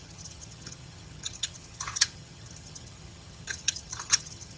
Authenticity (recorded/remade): remade